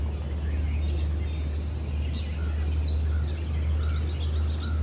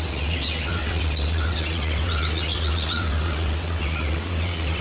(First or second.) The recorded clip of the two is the first